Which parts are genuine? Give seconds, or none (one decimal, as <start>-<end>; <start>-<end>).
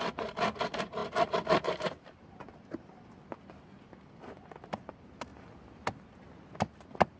0.0-7.2